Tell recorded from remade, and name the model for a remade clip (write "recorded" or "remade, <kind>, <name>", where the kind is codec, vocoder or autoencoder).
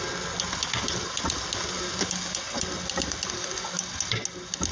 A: recorded